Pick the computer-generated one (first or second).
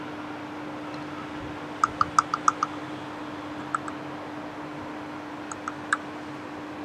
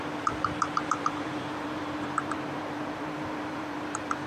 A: second